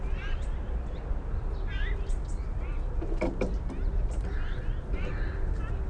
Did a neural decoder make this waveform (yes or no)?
no